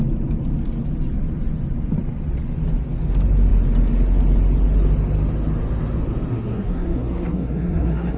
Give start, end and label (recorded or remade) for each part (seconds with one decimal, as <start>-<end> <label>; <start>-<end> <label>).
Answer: 0.0-6.3 recorded; 6.3-8.2 remade